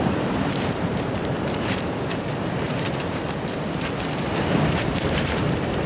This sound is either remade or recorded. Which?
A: remade